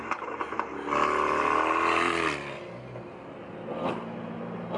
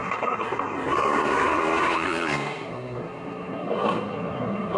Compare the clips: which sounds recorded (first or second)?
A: first